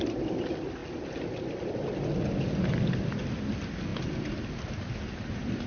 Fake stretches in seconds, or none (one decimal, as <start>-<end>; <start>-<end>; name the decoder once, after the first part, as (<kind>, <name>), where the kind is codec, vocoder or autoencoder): none